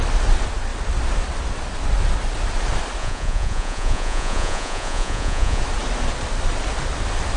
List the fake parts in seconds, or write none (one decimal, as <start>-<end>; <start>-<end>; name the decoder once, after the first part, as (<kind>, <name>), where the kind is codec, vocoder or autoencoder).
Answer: 3.0-5.6 (vocoder, Vocos)